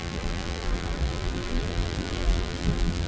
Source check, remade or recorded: remade